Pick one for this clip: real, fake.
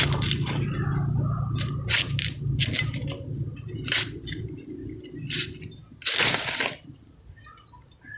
real